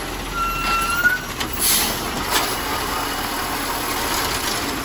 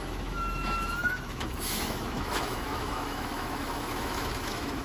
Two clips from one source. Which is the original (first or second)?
first